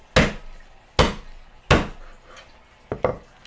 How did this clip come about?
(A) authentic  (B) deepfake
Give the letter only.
A